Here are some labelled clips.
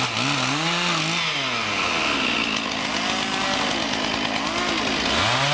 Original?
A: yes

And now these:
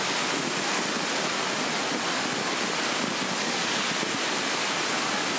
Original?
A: yes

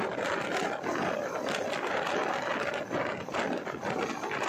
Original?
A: yes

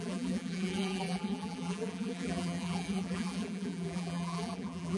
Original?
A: no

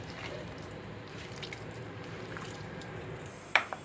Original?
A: no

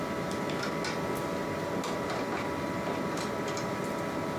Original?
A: yes